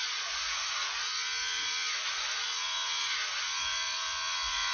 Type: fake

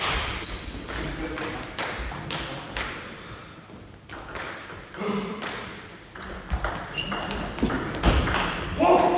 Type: fake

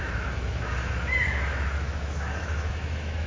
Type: fake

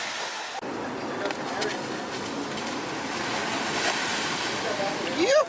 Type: real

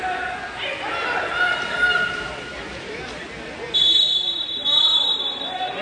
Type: real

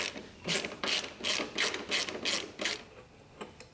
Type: real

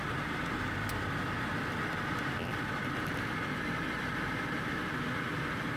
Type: real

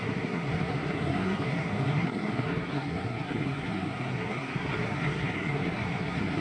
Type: fake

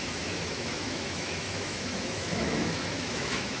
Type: fake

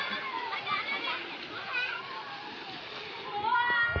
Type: real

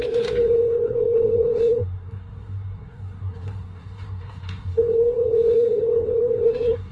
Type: fake